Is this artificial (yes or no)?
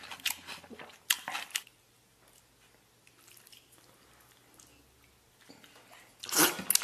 no